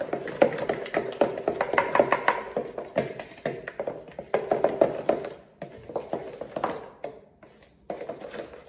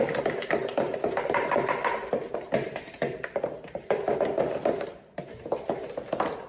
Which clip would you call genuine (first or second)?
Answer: first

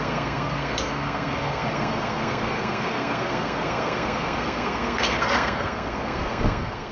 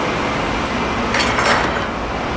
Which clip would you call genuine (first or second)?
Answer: second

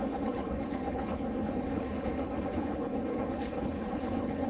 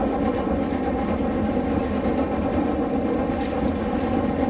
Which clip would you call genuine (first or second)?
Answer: second